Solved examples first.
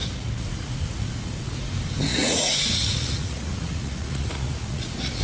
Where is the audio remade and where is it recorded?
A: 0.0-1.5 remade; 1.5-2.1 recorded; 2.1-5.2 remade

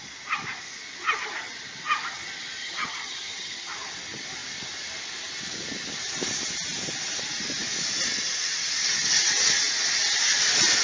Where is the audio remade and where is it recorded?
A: 0.0-2.6 recorded; 2.6-3.7 remade; 3.7-10.8 recorded

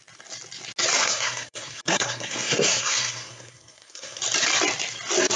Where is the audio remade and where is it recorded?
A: 0.0-1.0 recorded; 1.0-4.2 remade; 4.2-5.4 recorded

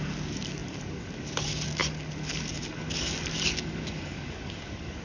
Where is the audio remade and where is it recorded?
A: 0.0-5.0 remade

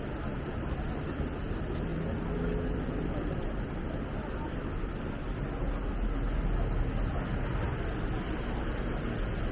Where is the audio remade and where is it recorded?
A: 0.0-9.5 recorded

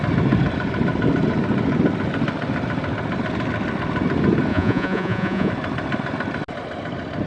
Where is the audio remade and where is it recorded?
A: 0.0-4.5 recorded; 4.5-5.5 remade; 5.5-7.3 recorded

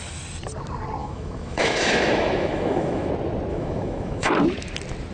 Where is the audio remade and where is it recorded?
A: 0.0-1.0 recorded; 1.0-3.1 remade; 3.1-3.5 recorded; 3.5-4.3 remade; 4.3-5.1 recorded

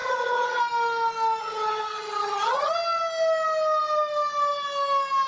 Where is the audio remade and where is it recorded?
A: 0.0-0.6 remade; 0.6-1.4 recorded; 1.4-2.7 remade; 2.7-5.3 recorded